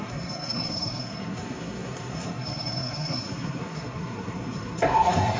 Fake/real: fake